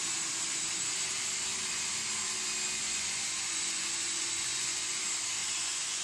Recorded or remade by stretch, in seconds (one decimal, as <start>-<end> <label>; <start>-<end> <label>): 0.0-2.8 recorded; 2.8-5.0 remade; 5.0-5.4 recorded; 5.4-6.0 remade